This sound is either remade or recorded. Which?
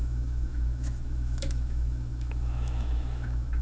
remade